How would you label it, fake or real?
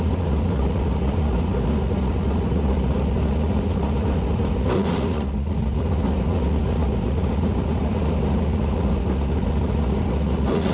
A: fake